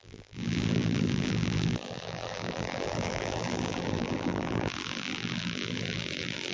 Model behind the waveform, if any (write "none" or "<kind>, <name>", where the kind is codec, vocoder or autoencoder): vocoder, BigVGAN v2